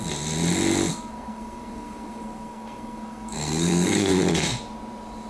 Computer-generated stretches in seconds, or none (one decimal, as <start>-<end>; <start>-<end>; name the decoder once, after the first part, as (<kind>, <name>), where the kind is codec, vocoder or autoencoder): 0.9-4.1 (codec, SNAC)